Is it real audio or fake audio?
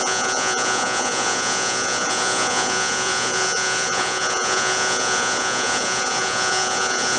fake